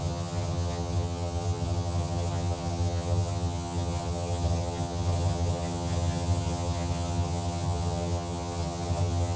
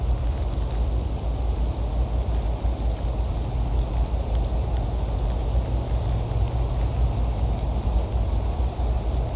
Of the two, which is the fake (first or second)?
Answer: first